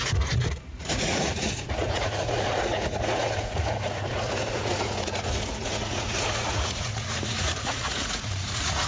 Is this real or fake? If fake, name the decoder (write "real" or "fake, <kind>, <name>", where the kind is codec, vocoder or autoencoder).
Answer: fake, vocoder, Vocos